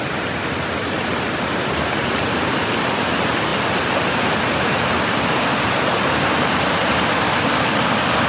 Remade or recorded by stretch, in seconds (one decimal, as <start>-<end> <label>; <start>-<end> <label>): 0.0-8.3 recorded